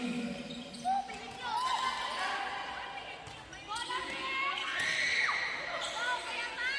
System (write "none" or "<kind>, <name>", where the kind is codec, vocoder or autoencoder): none